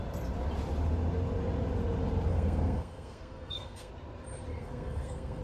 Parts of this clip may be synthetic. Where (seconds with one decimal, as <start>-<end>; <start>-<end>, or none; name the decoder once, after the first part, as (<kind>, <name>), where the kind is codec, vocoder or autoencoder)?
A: 2.3-3.9 (codec, SNAC); 4.5-5.4